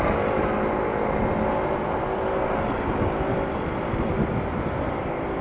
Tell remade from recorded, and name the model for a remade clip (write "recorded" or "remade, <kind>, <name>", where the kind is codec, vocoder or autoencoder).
recorded